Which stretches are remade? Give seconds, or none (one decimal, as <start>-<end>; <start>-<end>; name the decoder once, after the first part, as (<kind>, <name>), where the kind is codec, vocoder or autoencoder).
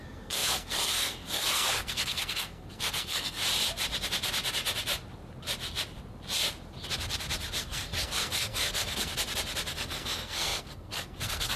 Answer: 0.0-3.4 (codec, SNAC); 7.6-9.1; 9.7-11.6